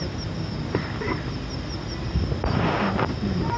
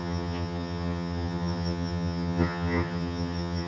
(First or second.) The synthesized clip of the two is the second